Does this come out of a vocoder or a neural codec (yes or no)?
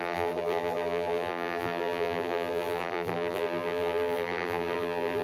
yes